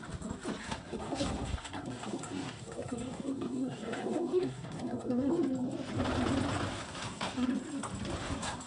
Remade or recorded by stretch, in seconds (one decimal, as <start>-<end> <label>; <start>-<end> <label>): 0.0-0.6 recorded; 0.6-5.3 remade; 5.3-6.7 recorded; 6.7-7.5 remade; 7.5-8.2 recorded; 8.2-8.7 remade

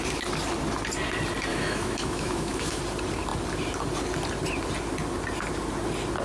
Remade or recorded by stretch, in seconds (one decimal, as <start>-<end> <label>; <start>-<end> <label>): 0.0-1.5 recorded; 1.5-2.8 remade; 2.8-6.2 recorded